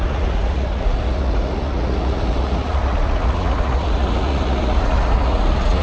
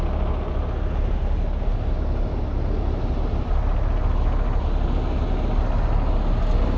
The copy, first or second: first